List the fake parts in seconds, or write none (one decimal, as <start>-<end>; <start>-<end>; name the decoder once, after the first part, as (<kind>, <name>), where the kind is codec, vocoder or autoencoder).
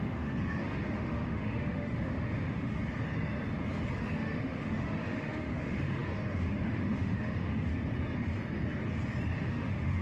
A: 0.0-2.8 (autoencoder, DAC-VAE); 4.0-7.7; 9.4-10.0